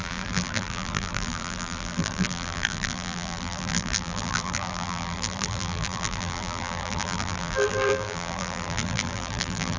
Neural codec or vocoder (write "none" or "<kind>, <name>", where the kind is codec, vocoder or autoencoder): vocoder, BigVGAN v2